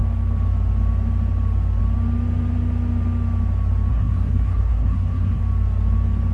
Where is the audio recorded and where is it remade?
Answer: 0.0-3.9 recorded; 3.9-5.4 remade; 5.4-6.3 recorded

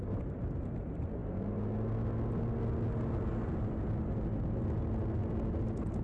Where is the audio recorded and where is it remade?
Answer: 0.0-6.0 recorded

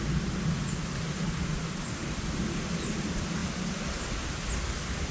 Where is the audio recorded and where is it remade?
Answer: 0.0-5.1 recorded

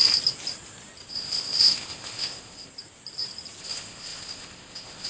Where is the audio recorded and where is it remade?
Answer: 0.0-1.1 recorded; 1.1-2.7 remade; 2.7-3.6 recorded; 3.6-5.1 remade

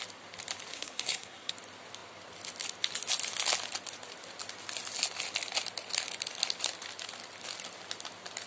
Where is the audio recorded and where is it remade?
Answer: 0.0-0.7 recorded; 0.7-1.5 remade; 1.5-8.5 recorded

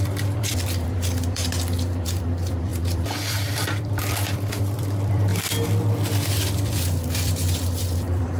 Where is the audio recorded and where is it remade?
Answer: 0.0-5.3 remade; 5.3-6.2 recorded; 6.2-8.4 remade

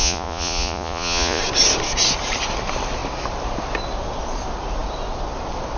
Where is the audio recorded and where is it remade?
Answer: 0.0-1.4 remade; 1.4-5.8 recorded

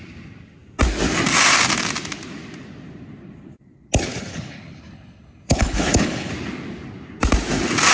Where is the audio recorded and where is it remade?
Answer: 0.0-4.3 recorded; 4.3-6.3 remade; 6.3-7.9 recorded